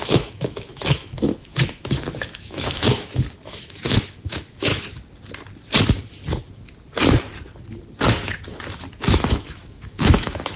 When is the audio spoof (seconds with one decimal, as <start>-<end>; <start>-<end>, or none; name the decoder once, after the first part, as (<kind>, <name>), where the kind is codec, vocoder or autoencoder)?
0.0-4.7 (autoencoder, DAC-VAE); 8.9-10.6